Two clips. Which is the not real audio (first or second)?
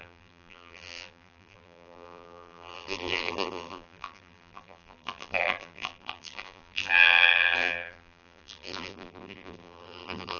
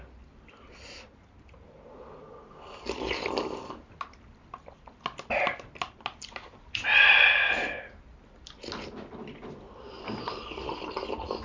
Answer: first